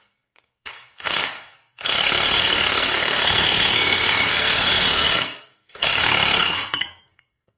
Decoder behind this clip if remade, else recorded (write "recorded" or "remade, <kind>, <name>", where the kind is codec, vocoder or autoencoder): remade, codec, SNAC